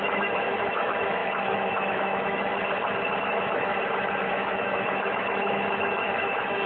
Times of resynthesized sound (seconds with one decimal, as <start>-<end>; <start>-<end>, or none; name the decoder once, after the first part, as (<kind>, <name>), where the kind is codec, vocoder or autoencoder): 0.0-2.5 (autoencoder, DAC-VAE); 3.2-3.7; 4.3-6.7